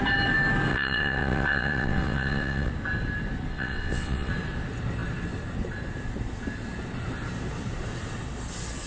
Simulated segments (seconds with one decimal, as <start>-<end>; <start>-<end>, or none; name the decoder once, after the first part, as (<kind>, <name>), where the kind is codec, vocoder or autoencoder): 0.7-2.7 (vocoder, WaveNeXt); 3.5-4.3